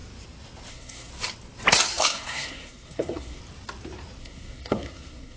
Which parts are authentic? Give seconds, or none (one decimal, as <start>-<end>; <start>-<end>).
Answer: 0.0-0.7; 1.1-2.0; 3.4-4.2